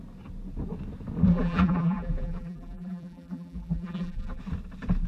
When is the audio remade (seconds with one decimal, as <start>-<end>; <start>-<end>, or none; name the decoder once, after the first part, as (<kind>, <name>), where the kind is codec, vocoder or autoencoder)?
1.3-4.4 (vocoder, BigVGAN v2)